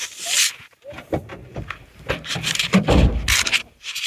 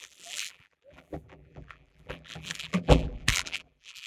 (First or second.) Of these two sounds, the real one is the first